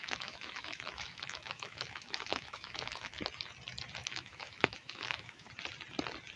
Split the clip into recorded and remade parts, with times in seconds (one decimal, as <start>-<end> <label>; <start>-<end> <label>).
0.0-3.2 remade; 3.2-4.0 recorded; 4.0-5.5 remade; 5.5-6.4 recorded